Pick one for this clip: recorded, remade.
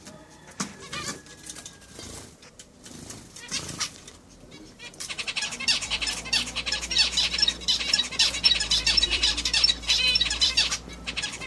remade